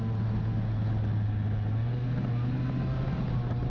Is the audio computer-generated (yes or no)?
no